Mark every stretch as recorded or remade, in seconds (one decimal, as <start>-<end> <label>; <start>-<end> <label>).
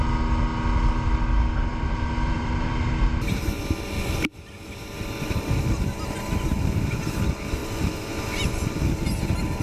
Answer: 0.0-1.7 recorded; 1.7-2.8 remade; 2.8-9.6 recorded